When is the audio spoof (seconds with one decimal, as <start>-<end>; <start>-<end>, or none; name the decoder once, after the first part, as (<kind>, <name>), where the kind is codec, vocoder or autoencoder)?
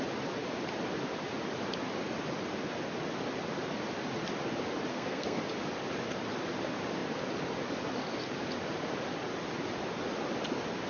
4.9-5.4 (codec, SNAC)